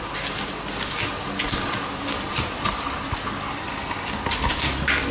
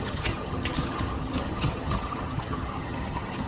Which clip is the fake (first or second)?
second